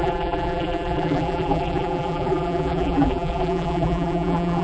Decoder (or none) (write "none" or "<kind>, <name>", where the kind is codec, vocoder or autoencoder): vocoder, BigVGAN v2